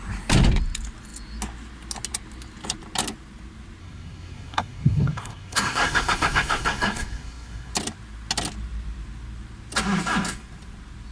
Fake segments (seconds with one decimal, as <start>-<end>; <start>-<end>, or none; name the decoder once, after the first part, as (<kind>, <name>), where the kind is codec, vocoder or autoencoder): 3.8-7.7 (codec, SNAC)